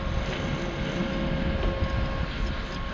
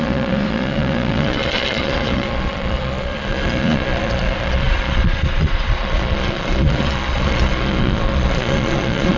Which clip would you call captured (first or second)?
first